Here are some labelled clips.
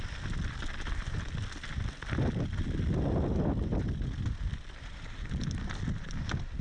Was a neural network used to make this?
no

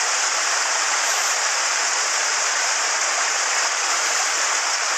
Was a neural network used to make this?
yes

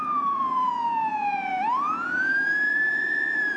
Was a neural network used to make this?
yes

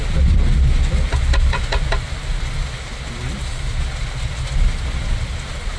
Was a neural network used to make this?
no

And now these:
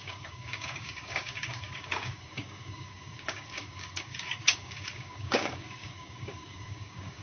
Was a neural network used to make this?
yes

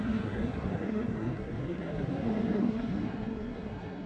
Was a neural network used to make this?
yes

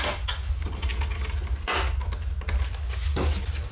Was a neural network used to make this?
no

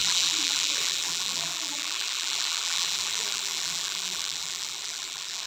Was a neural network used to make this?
yes